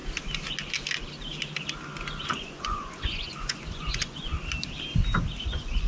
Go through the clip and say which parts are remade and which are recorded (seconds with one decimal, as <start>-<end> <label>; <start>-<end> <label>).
0.0-2.2 recorded; 2.2-4.3 remade; 4.3-5.4 recorded; 5.4-5.9 remade